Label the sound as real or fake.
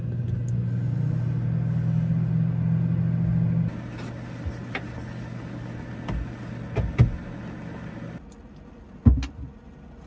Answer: real